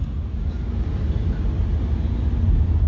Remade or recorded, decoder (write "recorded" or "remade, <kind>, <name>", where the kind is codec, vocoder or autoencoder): recorded